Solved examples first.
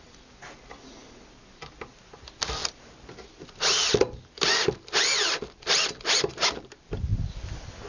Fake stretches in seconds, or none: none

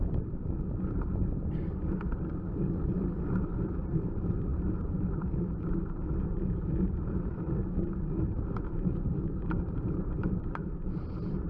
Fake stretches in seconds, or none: 0.0-11.5

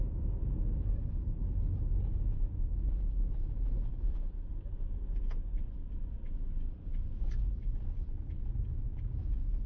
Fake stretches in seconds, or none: none

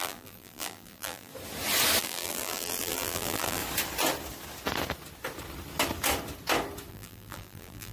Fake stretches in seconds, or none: 0.0-1.3; 2.0-3.6; 6.9-7.9

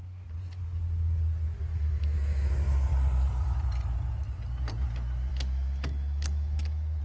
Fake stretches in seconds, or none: 1.7-2.5; 5.3-7.0

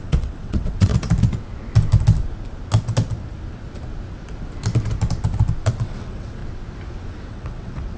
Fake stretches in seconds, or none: 0.0-0.9; 5.7-6.4; 7.3-8.0